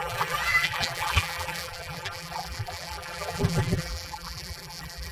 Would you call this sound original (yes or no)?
no